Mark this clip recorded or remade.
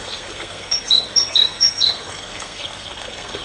remade